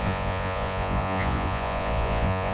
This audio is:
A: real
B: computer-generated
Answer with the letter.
B